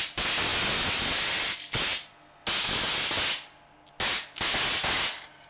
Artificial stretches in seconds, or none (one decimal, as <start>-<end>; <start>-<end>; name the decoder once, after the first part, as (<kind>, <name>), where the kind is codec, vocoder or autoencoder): none